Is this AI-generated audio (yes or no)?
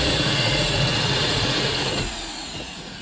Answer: yes